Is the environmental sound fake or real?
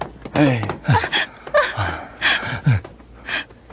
real